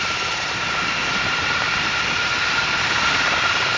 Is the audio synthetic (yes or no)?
yes